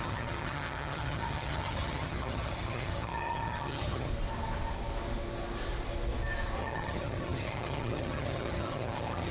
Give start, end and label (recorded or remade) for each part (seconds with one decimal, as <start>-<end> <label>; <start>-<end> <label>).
0.0-4.1 remade; 4.1-6.6 recorded; 6.6-9.3 remade